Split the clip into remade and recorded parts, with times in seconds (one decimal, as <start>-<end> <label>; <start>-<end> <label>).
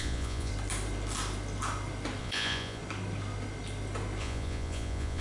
0.0-0.5 remade; 0.5-2.2 recorded; 2.2-2.8 remade; 2.8-4.2 recorded; 4.2-5.2 remade